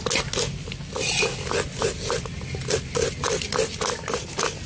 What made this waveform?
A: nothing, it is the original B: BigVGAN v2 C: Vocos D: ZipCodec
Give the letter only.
A